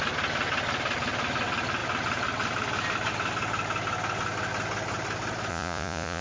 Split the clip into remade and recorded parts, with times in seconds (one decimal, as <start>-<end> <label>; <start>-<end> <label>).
0.0-5.5 recorded; 5.5-6.2 remade